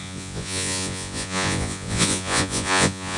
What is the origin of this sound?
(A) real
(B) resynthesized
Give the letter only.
B